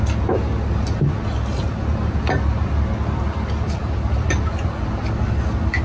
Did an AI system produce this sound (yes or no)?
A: no